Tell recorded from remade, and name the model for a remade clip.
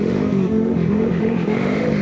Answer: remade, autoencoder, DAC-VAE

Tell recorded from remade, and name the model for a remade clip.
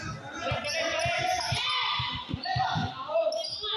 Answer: recorded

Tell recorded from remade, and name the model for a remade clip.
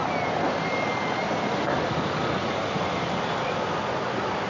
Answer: recorded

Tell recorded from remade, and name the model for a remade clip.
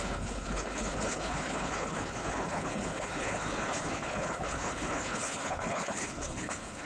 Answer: remade, codec, HILCodec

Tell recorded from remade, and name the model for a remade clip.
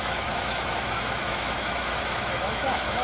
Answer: remade, autoencoder, DAC-VAE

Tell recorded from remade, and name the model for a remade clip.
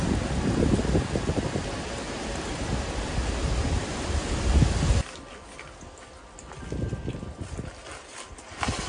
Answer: recorded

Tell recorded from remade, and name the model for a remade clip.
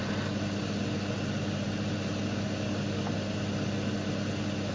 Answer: recorded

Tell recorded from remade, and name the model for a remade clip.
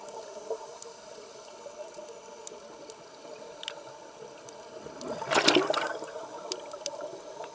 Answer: recorded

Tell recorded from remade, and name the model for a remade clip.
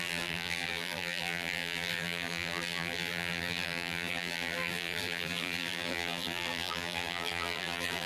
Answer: remade, vocoder, BigVGAN v2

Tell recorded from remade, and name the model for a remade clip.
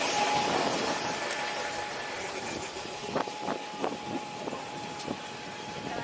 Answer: recorded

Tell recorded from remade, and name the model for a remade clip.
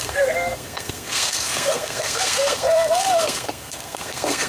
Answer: remade, codec, SNAC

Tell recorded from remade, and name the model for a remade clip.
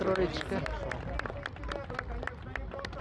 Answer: recorded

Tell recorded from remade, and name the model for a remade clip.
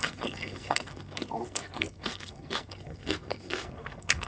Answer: remade, codec, SNAC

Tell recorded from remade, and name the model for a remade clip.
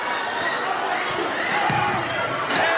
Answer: recorded